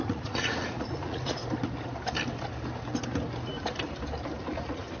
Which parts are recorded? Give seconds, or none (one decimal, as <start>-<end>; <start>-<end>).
1.4-4.4